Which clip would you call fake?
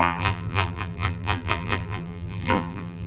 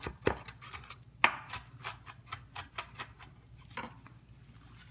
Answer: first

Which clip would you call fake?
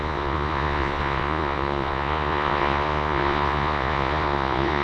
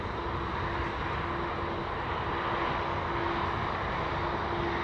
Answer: first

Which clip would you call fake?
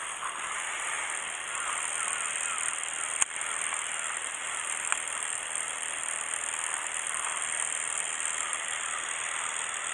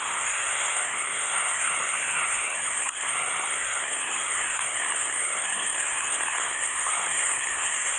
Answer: second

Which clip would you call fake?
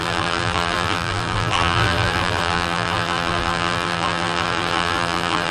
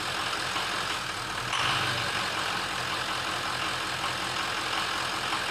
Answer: first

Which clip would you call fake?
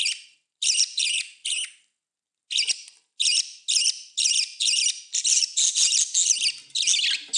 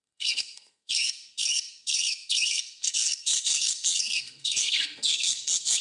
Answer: second